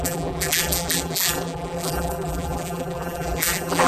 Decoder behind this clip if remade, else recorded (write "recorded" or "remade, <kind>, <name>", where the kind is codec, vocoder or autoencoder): remade, vocoder, BigVGAN v2